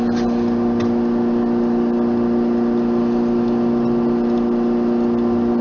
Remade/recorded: recorded